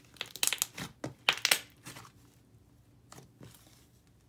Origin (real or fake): real